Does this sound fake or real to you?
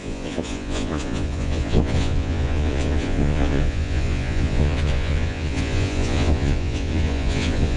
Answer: fake